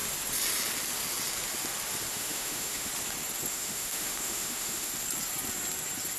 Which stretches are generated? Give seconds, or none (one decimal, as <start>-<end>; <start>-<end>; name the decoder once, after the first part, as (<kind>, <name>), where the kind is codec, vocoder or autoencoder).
2.1-2.9 (autoencoder, DAC-VAE); 3.5-4.9